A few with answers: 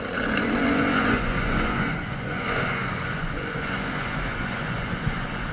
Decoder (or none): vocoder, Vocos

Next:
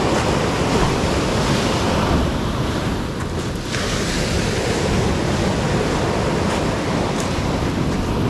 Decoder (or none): none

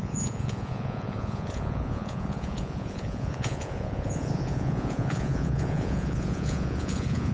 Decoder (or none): vocoder, Vocos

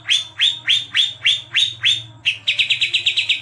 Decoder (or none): none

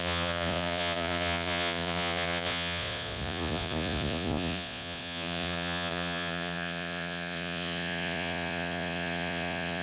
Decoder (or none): vocoder, Vocos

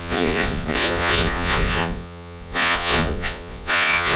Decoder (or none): vocoder, Vocos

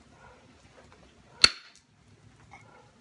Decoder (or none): none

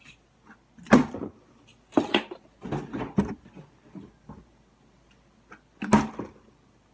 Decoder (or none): none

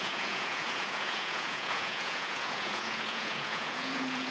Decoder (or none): vocoder, Vocos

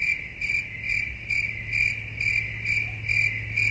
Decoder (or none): none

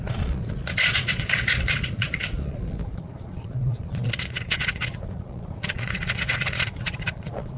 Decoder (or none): vocoder, Vocos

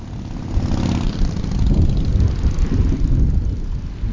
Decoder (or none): none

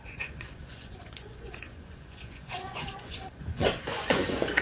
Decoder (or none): vocoder, Vocos